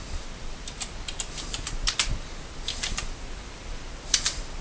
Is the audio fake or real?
real